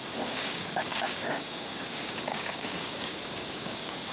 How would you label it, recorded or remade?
remade